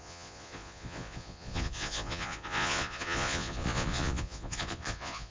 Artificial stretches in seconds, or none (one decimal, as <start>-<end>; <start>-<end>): 0.0-5.3